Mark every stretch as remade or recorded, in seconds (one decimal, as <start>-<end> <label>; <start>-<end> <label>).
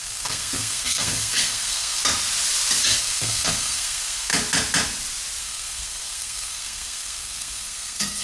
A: 0.0-2.0 remade; 2.0-3.0 recorded; 3.0-4.3 remade; 4.3-5.4 recorded; 5.4-8.2 remade